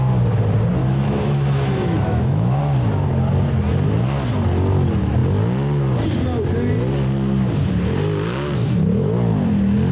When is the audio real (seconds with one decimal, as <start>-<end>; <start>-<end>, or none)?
0.0-0.8; 2.6-9.9